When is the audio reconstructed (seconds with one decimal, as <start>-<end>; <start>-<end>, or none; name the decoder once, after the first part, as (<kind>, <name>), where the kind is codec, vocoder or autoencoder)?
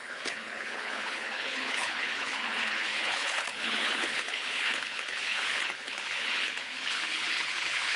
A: 0.0-8.0 (codec, HILCodec)